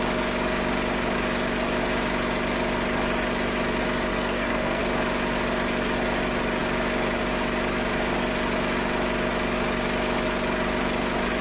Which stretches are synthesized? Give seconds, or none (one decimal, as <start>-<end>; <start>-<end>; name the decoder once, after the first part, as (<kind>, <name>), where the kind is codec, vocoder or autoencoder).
4.1-4.8 (codec, SNAC)